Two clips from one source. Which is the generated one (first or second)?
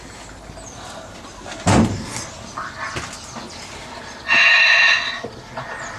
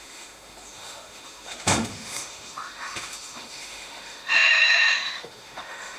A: second